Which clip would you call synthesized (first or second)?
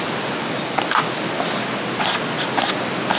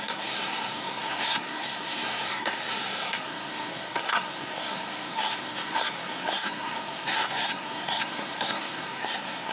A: second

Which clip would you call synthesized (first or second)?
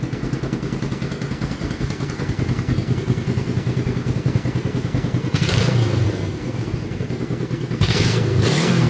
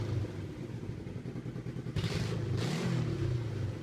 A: first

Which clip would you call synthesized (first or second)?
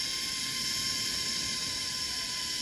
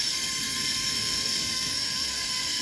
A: second